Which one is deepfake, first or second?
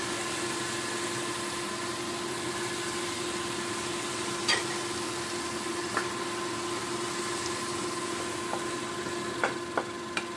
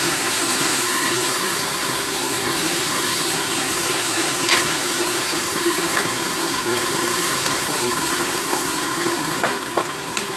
second